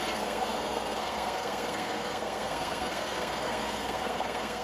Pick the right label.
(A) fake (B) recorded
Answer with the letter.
A